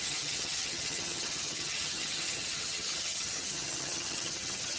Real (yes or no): no